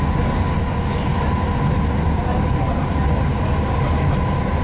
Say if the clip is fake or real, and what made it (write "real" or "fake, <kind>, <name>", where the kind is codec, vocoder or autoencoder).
real